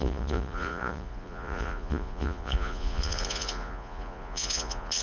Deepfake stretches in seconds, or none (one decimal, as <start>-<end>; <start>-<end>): 0.0-5.0